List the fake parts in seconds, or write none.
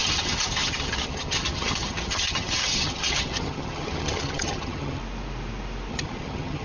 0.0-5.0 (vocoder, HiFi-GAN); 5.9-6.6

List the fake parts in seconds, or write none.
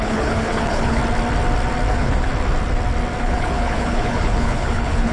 0.0-1.0 (codec, HILCodec); 1.9-2.3; 3.2-5.1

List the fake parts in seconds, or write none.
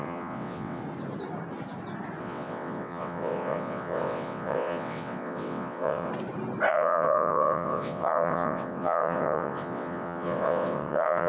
0.0-0.8 (vocoder, WaveNeXt); 2.2-6.1; 6.7-11.3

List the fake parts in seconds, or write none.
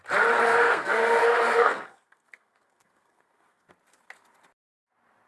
0.5-3.7 (codec, SNAC)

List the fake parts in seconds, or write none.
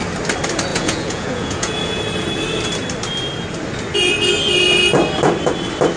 0.7-2.0 (vocoder, Vocos)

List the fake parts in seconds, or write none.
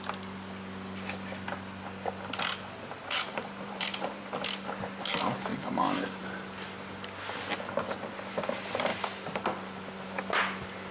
3.0-4.2 (vocoder, BigVGAN v2)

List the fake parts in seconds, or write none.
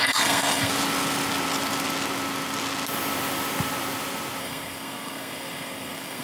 0.0-0.7 (codec, SNAC); 4.4-6.2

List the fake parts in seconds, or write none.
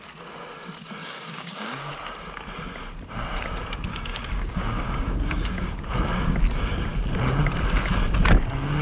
1.0-1.9 (codec, DAC); 3.9-5.8